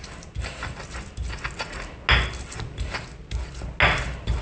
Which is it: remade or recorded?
recorded